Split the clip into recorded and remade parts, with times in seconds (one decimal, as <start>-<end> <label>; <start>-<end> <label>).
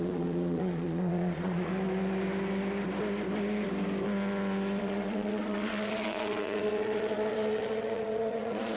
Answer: 0.0-1.7 remade; 1.7-4.8 recorded; 4.8-8.8 remade